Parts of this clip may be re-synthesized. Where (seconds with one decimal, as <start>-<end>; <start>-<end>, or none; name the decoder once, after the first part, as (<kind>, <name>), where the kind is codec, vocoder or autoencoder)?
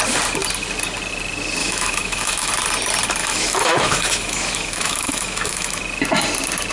1.6-2.5 (autoencoder, DAC-VAE); 3.2-5.8